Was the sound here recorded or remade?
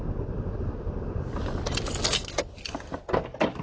recorded